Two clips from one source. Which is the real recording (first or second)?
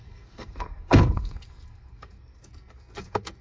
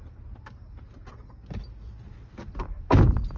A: second